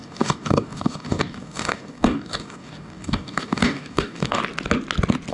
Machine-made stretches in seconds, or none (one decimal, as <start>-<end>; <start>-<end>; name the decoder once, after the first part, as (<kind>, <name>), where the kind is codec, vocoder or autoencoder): 0.0-4.4 (codec, DAC)